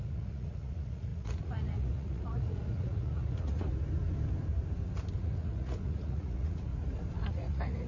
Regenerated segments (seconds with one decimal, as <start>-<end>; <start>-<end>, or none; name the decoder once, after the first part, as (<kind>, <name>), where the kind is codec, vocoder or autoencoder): 0.0-3.7 (vocoder, Vocos); 5.2-6.7; 7.3-7.9